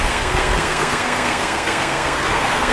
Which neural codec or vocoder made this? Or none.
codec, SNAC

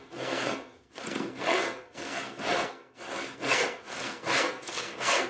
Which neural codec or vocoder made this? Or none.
codec, SNAC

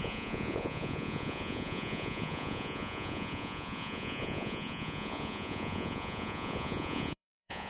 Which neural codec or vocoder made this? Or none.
vocoder, Vocos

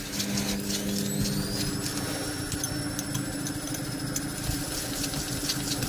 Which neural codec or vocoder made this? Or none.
none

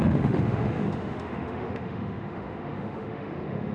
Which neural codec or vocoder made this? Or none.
autoencoder, DAC-VAE